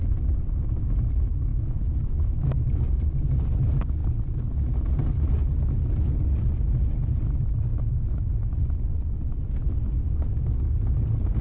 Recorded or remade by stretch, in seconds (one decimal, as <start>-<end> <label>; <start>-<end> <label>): 0.0-1.5 recorded; 1.5-2.6 remade; 2.6-11.4 recorded